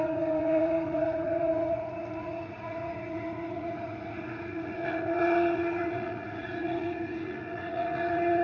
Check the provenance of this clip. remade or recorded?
remade